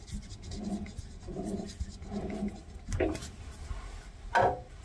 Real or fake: real